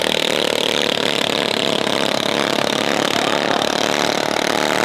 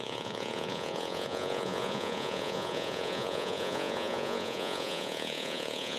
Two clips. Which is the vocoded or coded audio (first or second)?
second